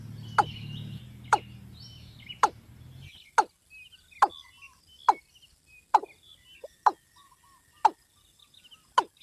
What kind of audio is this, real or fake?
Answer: real